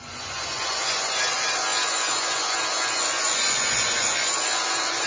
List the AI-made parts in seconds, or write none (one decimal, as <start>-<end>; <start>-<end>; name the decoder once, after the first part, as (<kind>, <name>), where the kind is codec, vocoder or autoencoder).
0.0-5.1 (vocoder, Vocos)